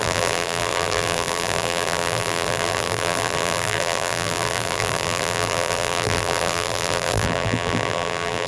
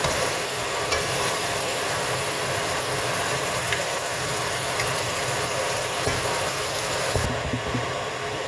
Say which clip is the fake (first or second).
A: first